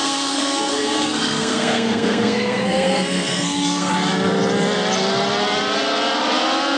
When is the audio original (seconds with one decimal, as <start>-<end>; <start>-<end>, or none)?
3.9-6.8

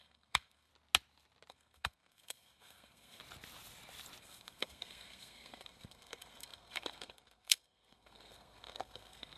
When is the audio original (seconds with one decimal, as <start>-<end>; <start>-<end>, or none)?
0.7-1.5; 3.2-4.2

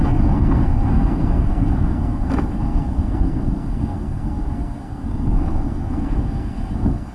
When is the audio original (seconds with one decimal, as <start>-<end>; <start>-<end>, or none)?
none

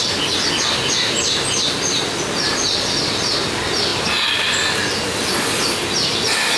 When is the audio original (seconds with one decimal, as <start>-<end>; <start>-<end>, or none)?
0.0-6.6

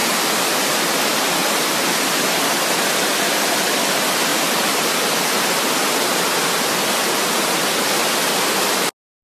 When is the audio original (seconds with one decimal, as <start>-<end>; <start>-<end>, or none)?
0.0-9.2

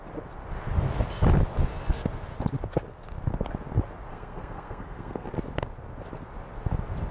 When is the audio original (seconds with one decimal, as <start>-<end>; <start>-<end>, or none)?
0.0-4.1; 5.4-7.1